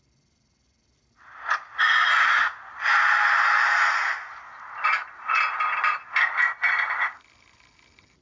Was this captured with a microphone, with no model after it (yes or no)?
yes